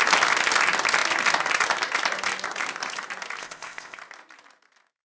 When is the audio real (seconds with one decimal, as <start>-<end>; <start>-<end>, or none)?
0.0-3.4; 4.0-5.1